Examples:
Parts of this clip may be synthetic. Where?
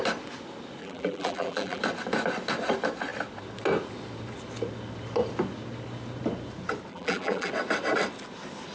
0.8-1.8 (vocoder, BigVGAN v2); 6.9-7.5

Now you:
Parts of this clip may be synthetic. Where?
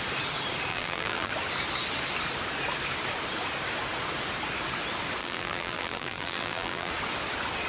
0.7-1.3 (vocoder, BigVGAN v2); 5.2-6.9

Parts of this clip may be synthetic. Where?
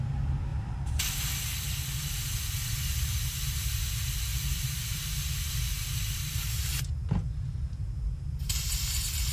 0.5-1.1 (vocoder, BigVGAN v2); 4.3-8.5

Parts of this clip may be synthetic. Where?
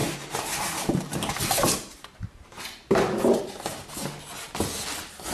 0.0-3.2 (vocoder, BigVGAN v2)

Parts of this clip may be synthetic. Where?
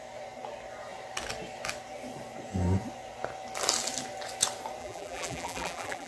4.8-6.1 (vocoder, BigVGAN v2)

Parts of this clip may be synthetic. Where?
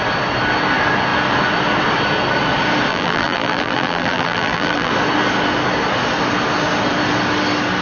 2.9-4.9 (vocoder, BigVGAN v2)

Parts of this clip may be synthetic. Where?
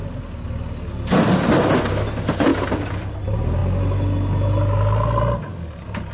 2.5-3.2 (vocoder, BigVGAN v2)